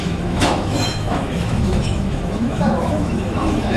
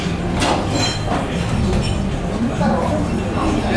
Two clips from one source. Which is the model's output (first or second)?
first